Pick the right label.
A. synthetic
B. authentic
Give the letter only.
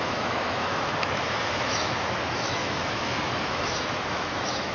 A